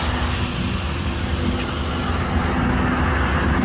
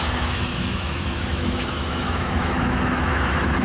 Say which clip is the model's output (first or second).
second